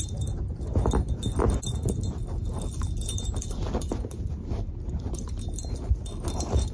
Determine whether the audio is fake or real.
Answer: real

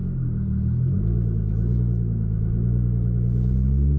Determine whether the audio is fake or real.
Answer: real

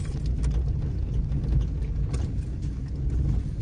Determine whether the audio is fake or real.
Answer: real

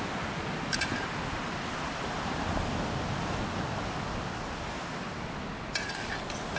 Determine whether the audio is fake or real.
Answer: real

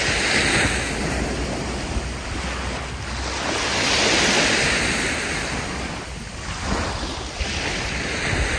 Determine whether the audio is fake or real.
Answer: real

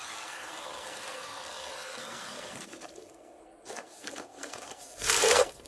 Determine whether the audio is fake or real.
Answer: fake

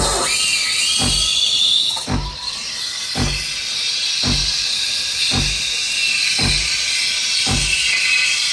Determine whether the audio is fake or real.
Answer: real